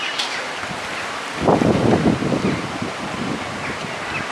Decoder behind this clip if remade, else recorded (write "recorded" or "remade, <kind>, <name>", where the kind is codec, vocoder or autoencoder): recorded